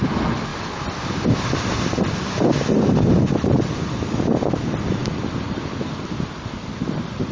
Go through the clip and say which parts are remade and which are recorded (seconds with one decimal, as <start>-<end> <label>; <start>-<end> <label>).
0.0-7.3 recorded